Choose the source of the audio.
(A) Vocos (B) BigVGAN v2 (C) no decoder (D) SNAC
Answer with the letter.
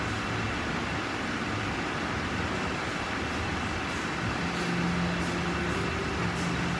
C